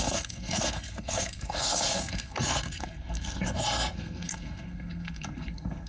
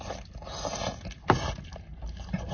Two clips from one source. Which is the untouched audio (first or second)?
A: second